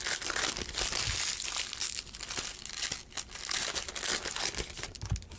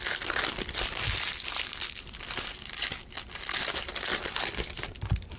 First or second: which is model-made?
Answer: second